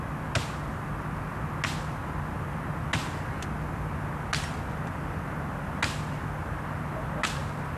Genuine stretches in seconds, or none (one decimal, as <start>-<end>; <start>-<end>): 0.0-7.8